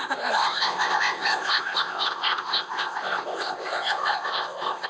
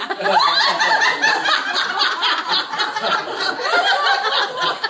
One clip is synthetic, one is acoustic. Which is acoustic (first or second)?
second